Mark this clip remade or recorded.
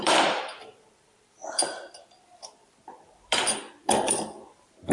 remade